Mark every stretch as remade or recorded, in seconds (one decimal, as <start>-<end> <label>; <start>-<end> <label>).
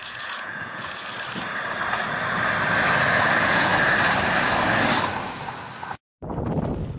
0.0-1.1 remade; 1.1-3.1 recorded; 3.1-3.7 remade; 3.7-7.0 recorded